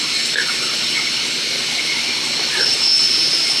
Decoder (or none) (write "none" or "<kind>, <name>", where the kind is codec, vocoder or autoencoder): none